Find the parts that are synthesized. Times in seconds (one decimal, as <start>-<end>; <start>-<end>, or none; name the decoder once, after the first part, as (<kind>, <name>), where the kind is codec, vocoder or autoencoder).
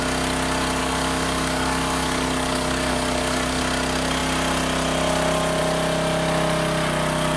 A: 0.8-3.6 (codec, DAC)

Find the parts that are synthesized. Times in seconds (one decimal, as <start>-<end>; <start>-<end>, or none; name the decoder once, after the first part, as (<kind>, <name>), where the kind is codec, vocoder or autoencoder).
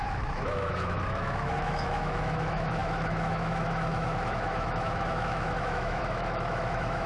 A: 0.0-7.1 (autoencoder, DAC-VAE)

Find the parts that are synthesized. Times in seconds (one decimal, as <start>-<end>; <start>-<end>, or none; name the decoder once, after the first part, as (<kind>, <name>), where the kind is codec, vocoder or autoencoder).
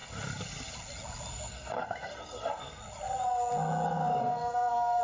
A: 1.3-2.8 (codec, SNAC); 4.2-5.0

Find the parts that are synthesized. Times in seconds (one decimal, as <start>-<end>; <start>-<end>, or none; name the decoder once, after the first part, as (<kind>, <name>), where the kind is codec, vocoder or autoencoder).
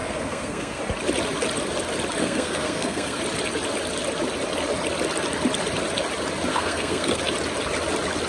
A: 0.0-0.8 (codec, SNAC); 2.2-3.2; 6.5-7.2